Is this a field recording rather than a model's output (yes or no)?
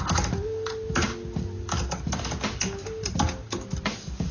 yes